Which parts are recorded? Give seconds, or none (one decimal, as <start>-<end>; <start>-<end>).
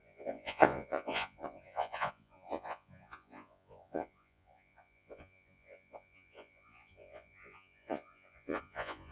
none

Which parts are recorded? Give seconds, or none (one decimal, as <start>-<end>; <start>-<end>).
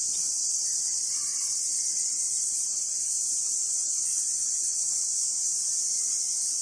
0.0-0.4; 3.1-3.6; 4.8-6.6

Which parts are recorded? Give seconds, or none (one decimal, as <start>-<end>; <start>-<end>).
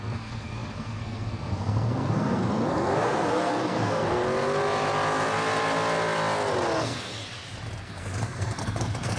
4.2-6.8; 7.2-7.8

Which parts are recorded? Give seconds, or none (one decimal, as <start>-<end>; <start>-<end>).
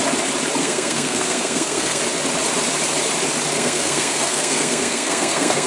0.0-0.6; 2.0-3.5